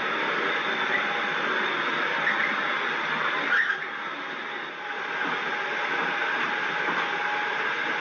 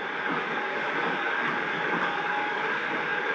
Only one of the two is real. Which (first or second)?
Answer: first